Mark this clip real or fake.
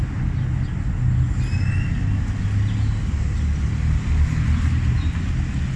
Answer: real